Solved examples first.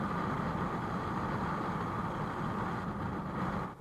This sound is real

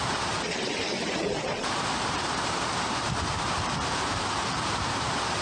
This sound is fake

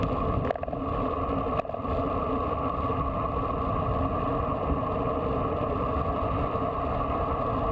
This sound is fake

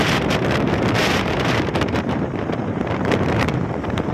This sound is fake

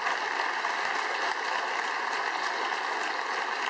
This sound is real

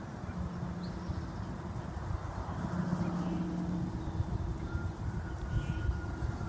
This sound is real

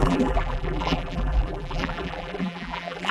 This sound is fake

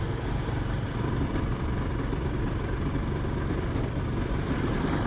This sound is fake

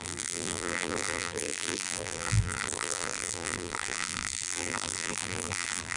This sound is fake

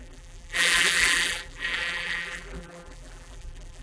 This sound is fake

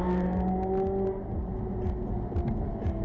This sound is real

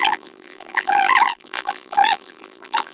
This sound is fake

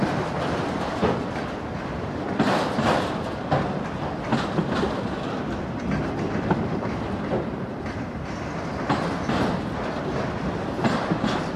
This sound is real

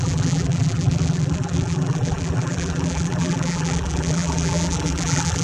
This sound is fake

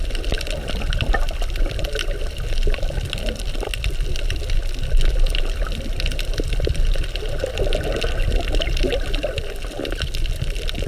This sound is real